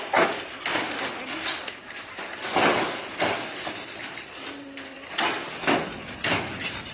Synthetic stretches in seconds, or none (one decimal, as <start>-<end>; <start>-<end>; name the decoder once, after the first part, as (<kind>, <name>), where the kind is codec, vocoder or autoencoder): none